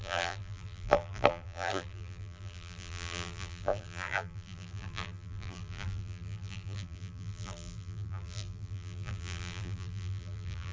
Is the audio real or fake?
fake